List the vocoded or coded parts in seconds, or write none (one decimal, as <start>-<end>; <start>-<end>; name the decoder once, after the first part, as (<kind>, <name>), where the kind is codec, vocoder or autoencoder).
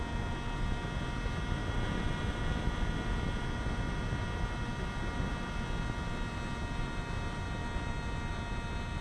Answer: none